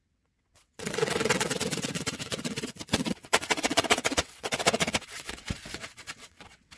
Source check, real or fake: fake